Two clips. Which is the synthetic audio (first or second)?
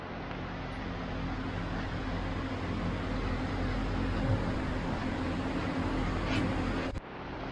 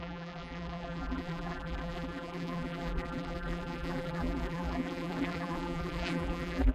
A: second